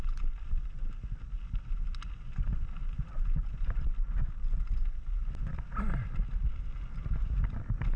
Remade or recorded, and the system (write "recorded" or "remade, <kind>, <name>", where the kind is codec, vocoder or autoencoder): recorded